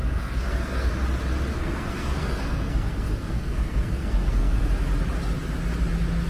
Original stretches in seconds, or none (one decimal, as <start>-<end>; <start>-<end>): 0.9-1.5; 4.6-6.3